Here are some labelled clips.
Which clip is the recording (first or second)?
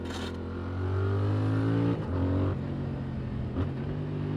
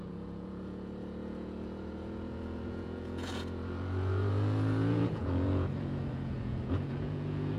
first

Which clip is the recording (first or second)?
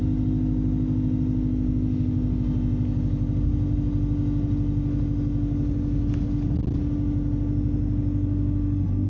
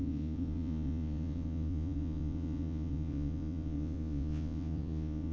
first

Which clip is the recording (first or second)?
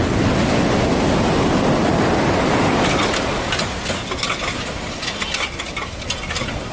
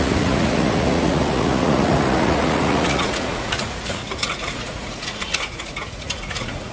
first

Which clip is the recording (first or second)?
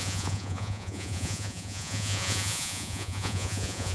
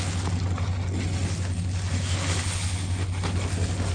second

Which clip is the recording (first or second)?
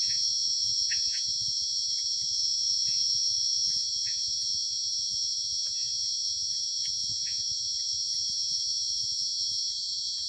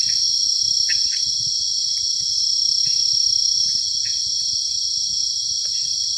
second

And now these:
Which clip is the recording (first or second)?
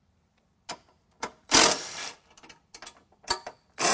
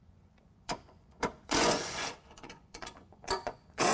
first